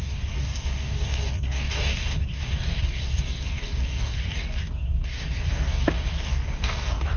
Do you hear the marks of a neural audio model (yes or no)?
yes